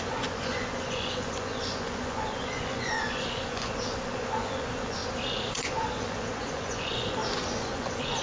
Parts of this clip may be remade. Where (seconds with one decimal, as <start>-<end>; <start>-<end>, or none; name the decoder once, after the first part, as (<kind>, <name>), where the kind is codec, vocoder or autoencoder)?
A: 0.0-5.0 (vocoder, Vocos); 5.5-8.2